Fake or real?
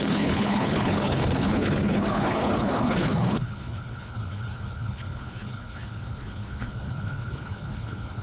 fake